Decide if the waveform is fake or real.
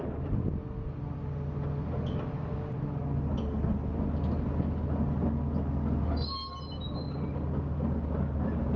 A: real